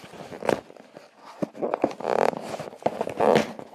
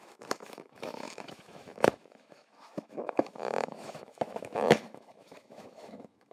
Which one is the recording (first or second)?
first